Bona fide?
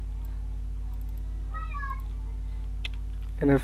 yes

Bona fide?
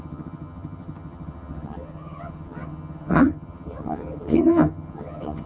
no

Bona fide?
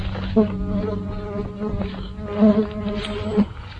yes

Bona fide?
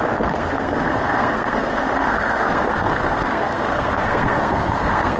no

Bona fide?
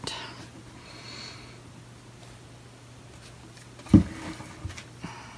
yes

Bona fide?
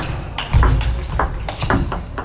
yes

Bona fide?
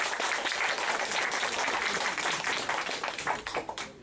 no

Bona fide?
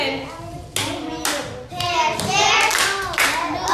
yes